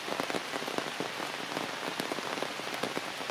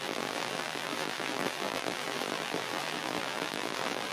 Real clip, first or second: first